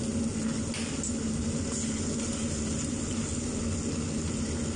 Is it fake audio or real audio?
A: real